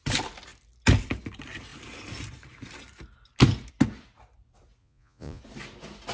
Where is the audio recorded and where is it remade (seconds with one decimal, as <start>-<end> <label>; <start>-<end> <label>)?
0.0-4.8 recorded; 4.8-5.4 remade; 5.4-6.1 recorded